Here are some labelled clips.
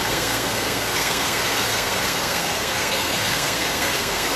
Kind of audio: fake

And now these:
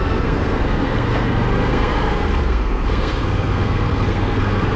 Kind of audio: fake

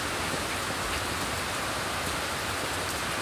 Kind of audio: real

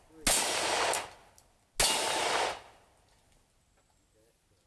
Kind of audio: real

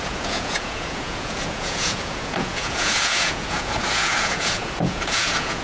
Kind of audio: fake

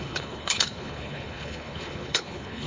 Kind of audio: fake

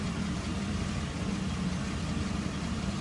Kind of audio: fake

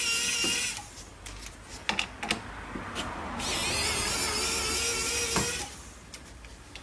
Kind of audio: real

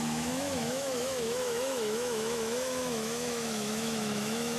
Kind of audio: fake